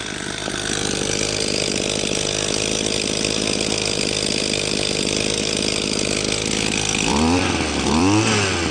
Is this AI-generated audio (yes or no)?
yes